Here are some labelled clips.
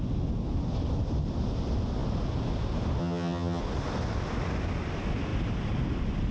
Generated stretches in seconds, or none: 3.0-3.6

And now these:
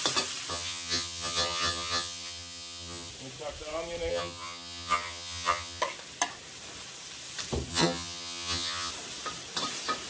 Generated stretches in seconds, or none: 0.5-3.1; 4.1-5.8; 7.7-8.9